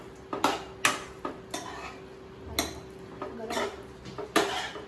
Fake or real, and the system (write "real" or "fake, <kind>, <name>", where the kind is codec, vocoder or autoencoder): real